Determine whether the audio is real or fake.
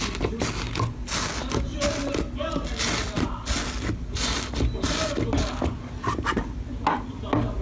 real